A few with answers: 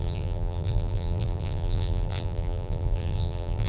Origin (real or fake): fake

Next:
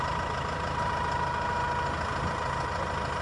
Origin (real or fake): real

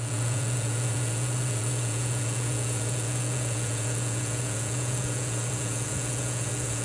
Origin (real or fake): fake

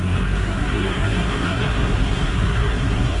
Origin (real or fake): fake